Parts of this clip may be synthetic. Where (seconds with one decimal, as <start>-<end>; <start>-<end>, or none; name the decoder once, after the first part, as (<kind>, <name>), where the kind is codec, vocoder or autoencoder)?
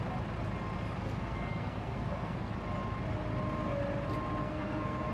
1.0-2.5 (codec, SNAC); 4.4-5.1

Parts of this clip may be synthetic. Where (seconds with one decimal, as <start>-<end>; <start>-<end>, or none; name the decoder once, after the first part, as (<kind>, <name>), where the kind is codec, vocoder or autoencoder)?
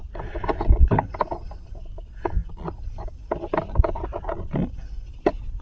none